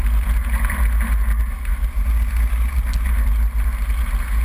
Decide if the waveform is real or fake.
real